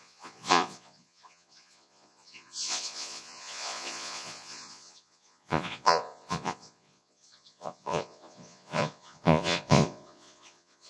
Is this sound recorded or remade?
remade